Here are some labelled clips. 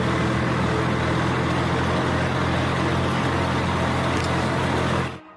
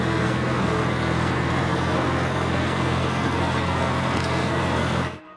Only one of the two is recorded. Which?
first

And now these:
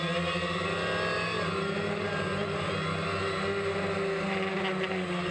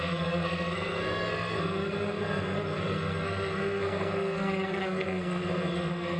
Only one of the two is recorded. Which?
first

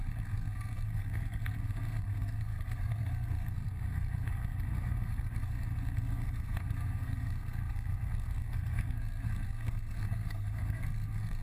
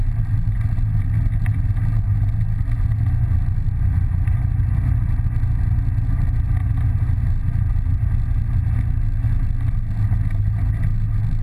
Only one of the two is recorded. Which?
second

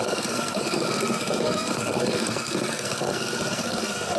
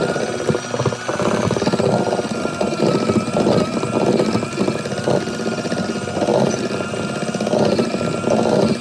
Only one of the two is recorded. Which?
second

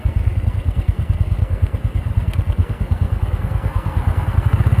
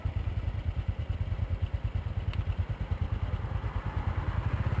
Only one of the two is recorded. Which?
second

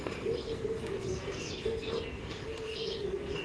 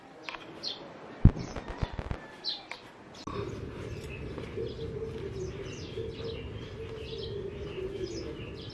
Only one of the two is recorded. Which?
second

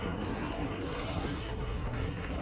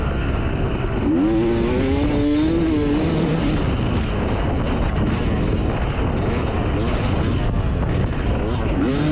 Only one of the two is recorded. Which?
second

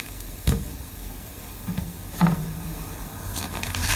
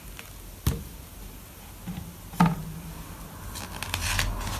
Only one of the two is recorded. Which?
second